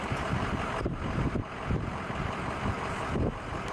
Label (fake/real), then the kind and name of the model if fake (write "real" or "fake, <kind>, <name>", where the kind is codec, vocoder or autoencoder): real